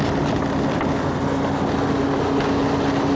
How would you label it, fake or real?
real